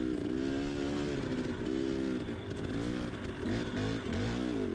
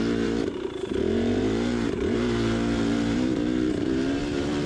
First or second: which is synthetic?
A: second